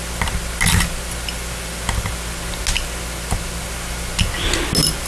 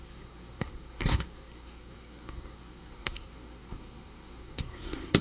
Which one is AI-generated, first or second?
second